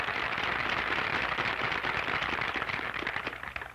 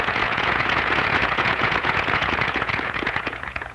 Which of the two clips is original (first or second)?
first